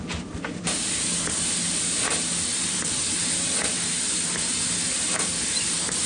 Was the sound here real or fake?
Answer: fake